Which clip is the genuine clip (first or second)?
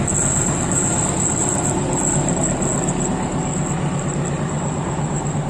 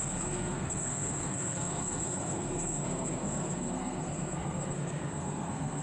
first